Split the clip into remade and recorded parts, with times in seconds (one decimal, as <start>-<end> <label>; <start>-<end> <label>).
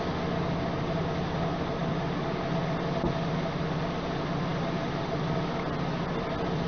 0.0-6.7 recorded